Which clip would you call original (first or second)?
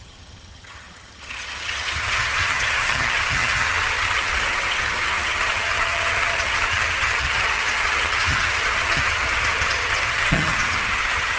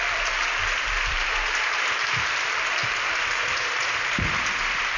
second